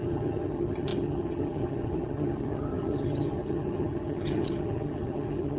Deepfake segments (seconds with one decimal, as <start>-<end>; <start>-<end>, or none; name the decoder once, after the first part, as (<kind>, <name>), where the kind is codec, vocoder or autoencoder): 0.0-5.6 (vocoder, HiFi-GAN)

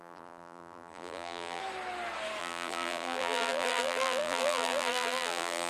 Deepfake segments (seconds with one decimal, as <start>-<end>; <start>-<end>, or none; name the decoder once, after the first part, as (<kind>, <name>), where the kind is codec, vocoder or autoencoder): 0.0-1.6 (vocoder, BigVGAN v2); 2.4-5.7

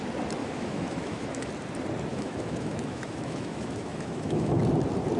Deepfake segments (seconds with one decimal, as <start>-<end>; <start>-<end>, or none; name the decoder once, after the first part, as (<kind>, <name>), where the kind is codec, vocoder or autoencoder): 0.4-1.5 (autoencoder, DAC-VAE); 2.1-4.6

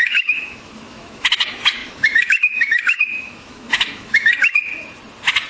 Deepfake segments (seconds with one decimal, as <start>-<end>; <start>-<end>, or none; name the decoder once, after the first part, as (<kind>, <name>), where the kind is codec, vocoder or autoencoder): 0.0-4.7 (autoencoder, DAC-VAE)

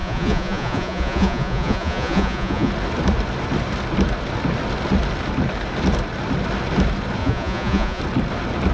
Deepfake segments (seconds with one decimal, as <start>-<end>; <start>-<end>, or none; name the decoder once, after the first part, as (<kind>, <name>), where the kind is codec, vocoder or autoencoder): 0.0-2.7 (vocoder, Vocos); 7.2-8.0

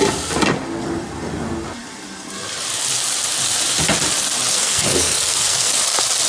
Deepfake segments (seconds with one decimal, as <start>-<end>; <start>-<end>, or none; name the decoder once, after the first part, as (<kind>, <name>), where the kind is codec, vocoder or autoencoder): 4.5-5.7 (codec, SNAC)